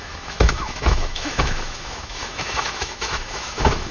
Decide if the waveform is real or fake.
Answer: fake